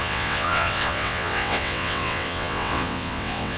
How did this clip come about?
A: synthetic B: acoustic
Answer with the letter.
A